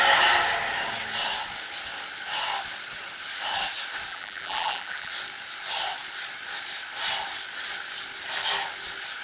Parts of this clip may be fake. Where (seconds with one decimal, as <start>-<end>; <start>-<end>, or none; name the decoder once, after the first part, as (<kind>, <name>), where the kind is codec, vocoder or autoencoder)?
4.1-5.1 (vocoder, BigVGAN v2)